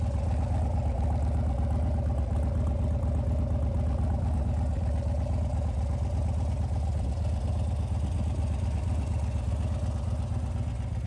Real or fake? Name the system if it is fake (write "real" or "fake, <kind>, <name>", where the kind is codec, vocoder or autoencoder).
real